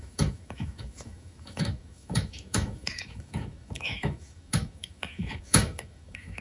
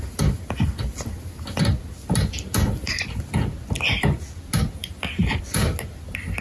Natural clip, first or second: second